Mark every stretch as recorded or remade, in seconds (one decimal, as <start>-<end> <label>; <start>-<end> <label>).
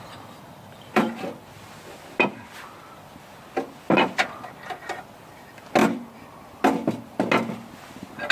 0.0-0.5 recorded; 0.5-1.5 remade; 1.5-2.3 recorded; 2.3-4.8 remade; 4.8-5.8 recorded; 5.8-6.3 remade; 6.3-8.3 recorded